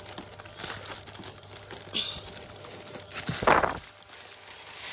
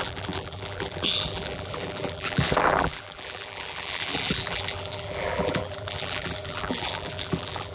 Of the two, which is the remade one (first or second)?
second